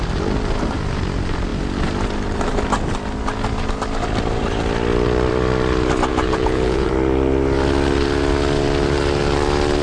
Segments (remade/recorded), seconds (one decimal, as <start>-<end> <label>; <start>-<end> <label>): 0.0-6.1 recorded; 6.1-6.9 remade; 6.9-9.8 recorded